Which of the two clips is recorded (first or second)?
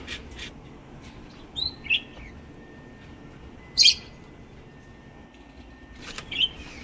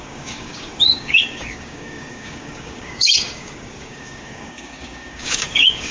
first